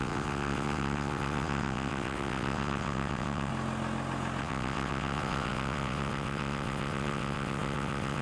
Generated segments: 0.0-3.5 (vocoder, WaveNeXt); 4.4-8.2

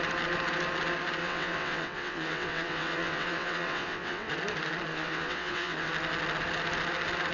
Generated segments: 1.2-4.3 (vocoder, WaveNeXt); 4.9-5.9

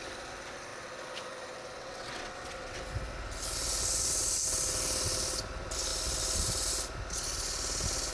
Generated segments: 1.8-2.8 (vocoder, WaveNeXt)

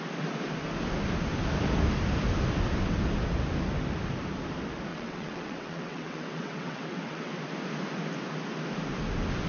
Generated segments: 4.9-7.4 (vocoder, WaveNeXt)

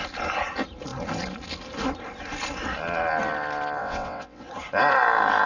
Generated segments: 3.8-4.5 (vocoder, WaveNeXt)

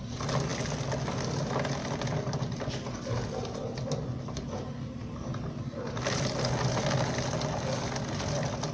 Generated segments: none